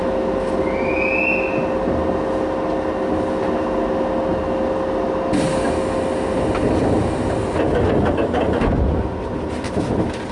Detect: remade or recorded recorded